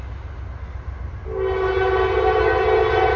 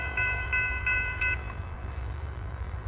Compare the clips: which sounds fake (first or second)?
second